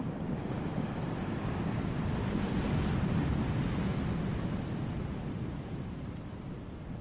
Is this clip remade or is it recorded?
recorded